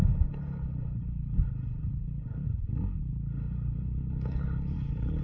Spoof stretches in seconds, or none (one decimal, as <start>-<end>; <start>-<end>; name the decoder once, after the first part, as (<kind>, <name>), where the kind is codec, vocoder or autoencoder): 0.0-5.2 (codec, HILCodec)

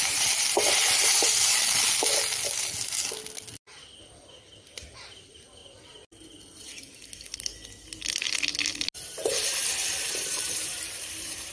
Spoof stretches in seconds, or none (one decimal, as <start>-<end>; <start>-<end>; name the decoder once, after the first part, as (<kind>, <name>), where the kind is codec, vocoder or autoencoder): 0.0-1.3 (vocoder, BigVGAN v2); 4.9-5.6; 10.5-11.5

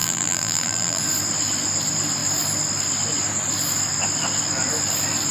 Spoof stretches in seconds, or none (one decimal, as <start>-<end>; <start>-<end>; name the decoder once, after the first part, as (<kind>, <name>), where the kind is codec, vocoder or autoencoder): 0.0-1.0 (vocoder, BigVGAN v2)